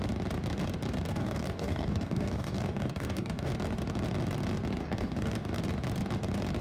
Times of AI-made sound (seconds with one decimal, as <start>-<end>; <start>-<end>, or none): 1.1-3.5; 4.8-5.6